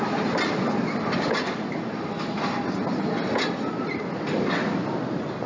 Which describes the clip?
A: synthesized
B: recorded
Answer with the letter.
B